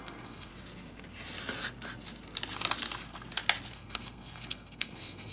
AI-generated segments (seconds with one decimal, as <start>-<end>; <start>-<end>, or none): 0.0-0.5; 3.7-5.3